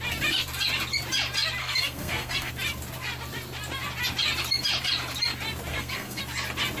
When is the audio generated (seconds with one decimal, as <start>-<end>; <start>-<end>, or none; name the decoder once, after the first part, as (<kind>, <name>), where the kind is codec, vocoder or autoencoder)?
1.6-2.5 (codec, SNAC); 5.7-6.2